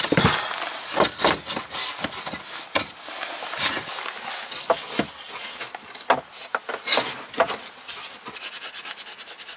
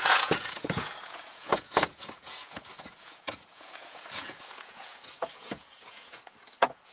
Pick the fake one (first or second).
second